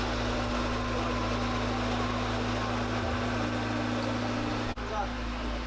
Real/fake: real